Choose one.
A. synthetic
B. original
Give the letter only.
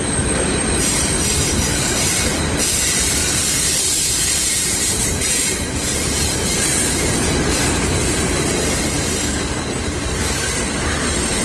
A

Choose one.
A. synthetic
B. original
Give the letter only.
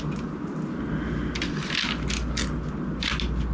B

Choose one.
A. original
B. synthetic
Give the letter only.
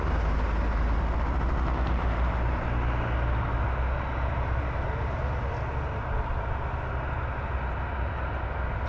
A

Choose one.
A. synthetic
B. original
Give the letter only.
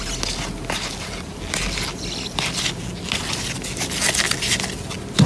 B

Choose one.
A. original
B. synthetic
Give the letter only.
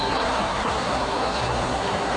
B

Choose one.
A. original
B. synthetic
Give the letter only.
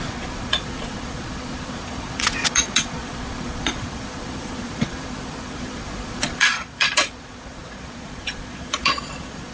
B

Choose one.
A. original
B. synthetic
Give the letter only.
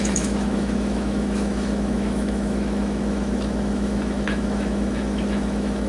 B